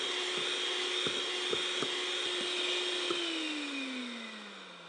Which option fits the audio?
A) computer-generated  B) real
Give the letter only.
B